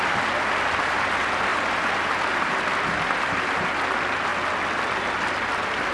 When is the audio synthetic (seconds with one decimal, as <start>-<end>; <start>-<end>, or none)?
none